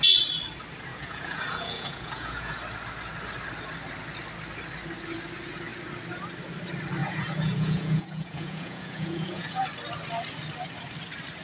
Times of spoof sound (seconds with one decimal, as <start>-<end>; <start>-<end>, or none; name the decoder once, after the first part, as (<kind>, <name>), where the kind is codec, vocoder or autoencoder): 0.9-2.6 (vocoder, Vocos); 7.0-9.7